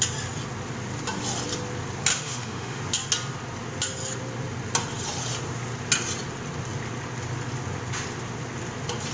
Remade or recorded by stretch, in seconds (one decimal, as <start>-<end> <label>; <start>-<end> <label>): 0.0-2.1 recorded; 2.1-2.8 remade; 2.8-9.1 recorded